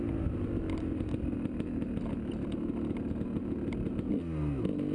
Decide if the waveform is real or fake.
real